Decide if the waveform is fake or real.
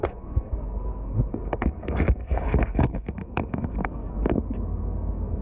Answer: fake